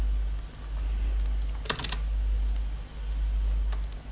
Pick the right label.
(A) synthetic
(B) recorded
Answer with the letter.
B